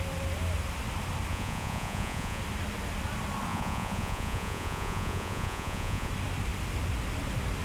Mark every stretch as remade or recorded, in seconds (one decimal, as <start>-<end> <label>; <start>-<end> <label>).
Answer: 0.0-1.3 recorded; 1.3-2.4 remade; 2.4-3.5 recorded; 3.5-6.1 remade; 6.1-7.6 recorded